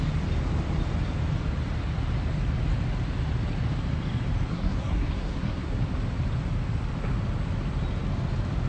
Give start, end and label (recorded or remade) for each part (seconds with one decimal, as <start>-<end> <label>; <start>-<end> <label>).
0.0-4.5 recorded; 4.5-5.8 remade; 5.8-8.7 recorded

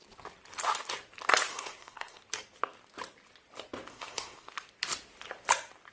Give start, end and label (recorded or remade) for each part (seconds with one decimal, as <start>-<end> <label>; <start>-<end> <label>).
0.0-1.5 recorded; 1.5-2.2 remade; 2.2-3.9 recorded; 3.9-4.5 remade; 4.5-5.9 recorded

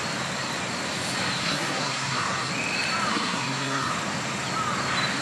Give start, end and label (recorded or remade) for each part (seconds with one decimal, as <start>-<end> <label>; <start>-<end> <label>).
0.0-1.4 recorded; 1.4-2.5 remade; 2.5-3.1 recorded; 3.1-3.9 remade; 3.9-5.2 recorded

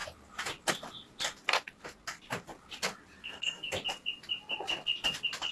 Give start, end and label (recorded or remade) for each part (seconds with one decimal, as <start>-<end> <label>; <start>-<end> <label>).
0.0-3.2 recorded; 3.2-3.7 remade; 3.7-5.5 recorded